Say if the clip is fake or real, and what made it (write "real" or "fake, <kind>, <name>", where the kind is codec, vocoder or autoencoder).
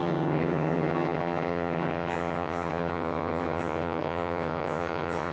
fake, vocoder, HiFi-GAN